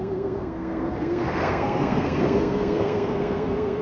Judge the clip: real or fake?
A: fake